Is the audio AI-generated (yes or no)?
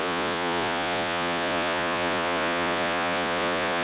yes